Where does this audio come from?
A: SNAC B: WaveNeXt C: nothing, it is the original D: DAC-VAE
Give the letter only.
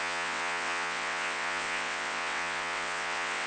B